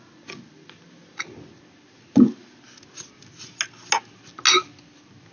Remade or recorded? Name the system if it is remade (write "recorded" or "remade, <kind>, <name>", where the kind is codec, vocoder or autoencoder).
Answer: recorded